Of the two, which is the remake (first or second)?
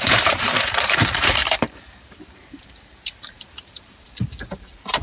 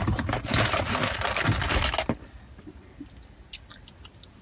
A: first